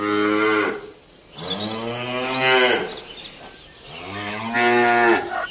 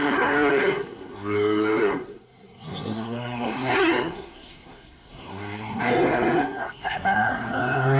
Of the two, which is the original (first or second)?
first